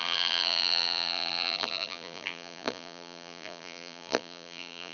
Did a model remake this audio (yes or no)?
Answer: yes